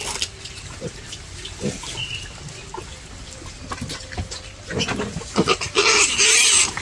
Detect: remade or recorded recorded